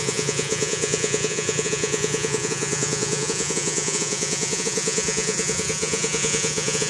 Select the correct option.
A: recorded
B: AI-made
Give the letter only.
B